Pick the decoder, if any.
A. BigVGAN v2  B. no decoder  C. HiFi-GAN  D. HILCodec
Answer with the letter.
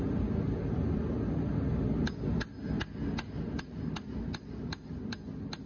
B